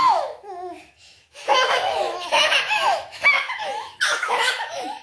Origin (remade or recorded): remade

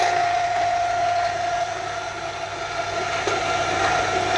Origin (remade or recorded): recorded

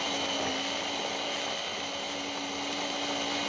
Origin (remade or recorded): recorded